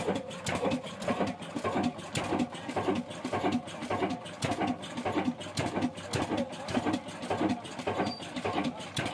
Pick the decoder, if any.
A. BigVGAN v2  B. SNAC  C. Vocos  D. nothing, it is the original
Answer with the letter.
D